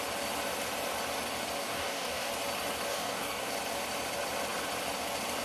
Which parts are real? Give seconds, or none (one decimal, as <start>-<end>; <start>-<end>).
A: 0.0-1.6; 2.3-2.9; 3.5-5.4